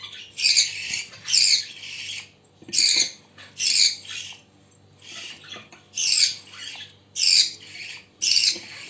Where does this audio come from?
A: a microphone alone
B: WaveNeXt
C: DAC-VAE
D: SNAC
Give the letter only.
A